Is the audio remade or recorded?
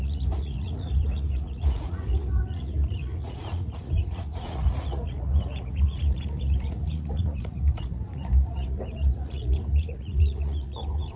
remade